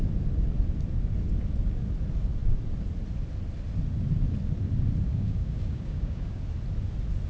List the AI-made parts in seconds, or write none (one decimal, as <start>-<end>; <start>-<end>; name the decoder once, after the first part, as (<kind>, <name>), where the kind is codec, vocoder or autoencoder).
5.1-6.4 (codec, DAC)